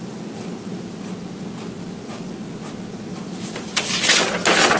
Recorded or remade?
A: recorded